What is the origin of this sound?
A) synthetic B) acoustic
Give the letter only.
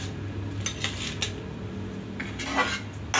B